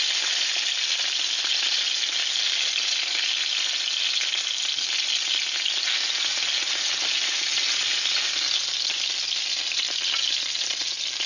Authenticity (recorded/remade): recorded